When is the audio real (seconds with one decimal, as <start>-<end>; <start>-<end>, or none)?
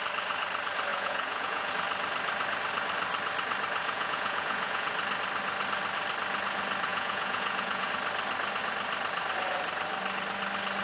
0.0-0.9; 1.7-3.8; 4.9-6.9; 7.9-10.8